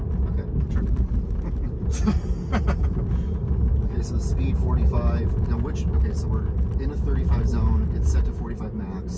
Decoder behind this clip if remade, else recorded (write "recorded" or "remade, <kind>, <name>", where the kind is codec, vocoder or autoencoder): recorded